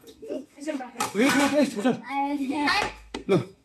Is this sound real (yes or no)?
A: no